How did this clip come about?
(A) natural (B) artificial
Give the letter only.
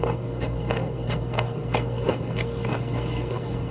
B